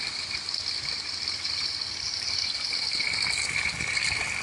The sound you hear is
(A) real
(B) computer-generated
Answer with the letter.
B